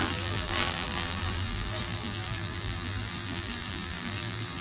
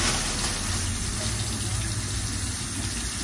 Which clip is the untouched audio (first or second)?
second